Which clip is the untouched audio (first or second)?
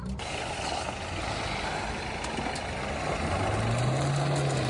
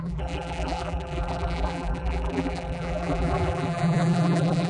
first